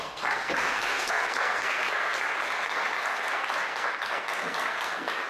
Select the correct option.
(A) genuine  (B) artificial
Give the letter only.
B